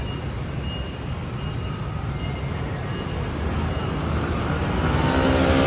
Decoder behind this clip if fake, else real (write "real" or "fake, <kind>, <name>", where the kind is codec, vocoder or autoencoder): real